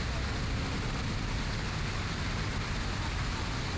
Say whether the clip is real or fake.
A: real